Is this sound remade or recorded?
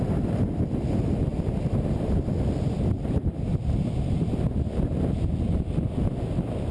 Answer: recorded